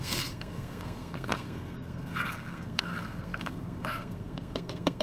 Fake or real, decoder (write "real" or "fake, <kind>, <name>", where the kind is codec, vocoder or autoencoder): fake, codec, SNAC